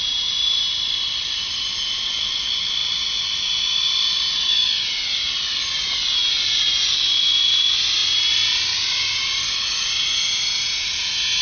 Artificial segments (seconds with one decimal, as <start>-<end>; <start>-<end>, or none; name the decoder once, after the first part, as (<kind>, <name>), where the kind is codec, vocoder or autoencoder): none